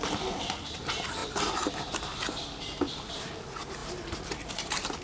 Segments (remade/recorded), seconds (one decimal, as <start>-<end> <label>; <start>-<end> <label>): 0.0-5.0 remade